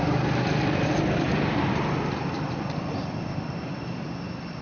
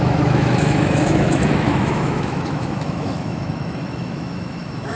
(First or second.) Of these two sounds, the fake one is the second